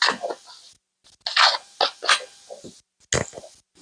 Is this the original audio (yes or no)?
yes